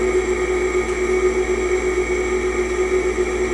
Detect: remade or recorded recorded